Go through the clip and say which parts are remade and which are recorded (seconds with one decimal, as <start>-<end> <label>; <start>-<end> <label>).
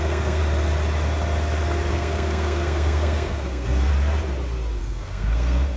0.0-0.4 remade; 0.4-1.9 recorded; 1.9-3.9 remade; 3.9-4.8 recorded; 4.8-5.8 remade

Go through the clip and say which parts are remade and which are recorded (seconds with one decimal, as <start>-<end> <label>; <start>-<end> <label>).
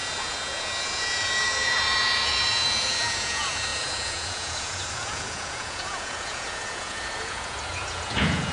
0.0-8.5 remade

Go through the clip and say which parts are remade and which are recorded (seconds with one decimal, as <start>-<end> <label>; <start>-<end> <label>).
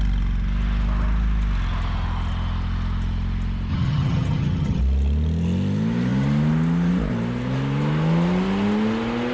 0.0-3.7 recorded; 3.7-4.8 remade; 4.8-9.3 recorded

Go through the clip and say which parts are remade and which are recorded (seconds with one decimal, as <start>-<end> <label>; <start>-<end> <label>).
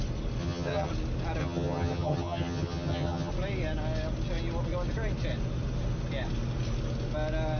0.0-0.4 recorded; 0.4-0.9 remade; 0.9-1.4 recorded; 1.4-3.3 remade; 3.3-7.6 recorded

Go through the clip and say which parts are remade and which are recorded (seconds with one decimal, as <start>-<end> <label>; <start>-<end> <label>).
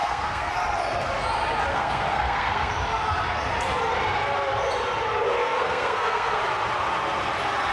0.0-0.5 remade; 0.5-1.7 recorded; 1.7-2.7 remade; 2.7-5.4 recorded; 5.4-6.4 remade; 6.4-7.7 recorded